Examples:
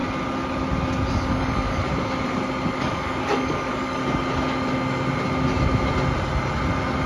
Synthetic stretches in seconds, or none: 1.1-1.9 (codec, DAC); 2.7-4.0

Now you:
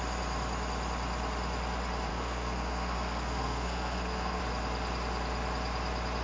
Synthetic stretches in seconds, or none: 2.1-4.4 (codec, SNAC)

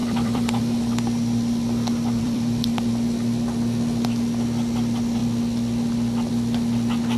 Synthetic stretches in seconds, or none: 0.0-0.6 (vocoder, BigVGAN v2); 2.2-2.9

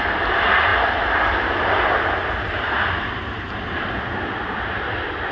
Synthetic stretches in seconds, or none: none

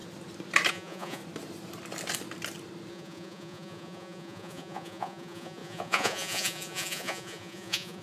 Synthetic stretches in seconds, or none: 0.7-1.2 (vocoder, Vocos); 2.9-8.0

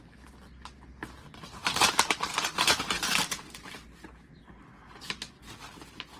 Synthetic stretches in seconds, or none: 1.6-4.2 (vocoder, BigVGAN v2)

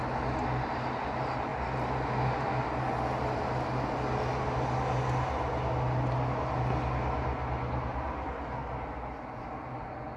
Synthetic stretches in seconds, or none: none